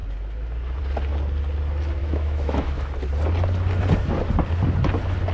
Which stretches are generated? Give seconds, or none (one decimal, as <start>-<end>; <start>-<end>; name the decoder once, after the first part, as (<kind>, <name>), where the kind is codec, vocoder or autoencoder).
2.0-2.9 (autoencoder, DAC-VAE)